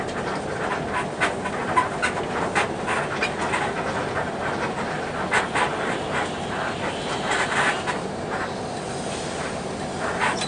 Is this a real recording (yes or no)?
yes